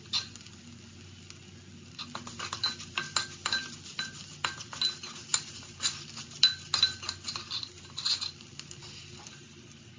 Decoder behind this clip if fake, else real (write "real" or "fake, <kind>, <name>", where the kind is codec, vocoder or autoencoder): real